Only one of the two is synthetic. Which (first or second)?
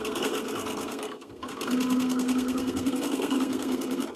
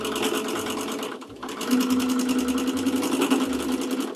first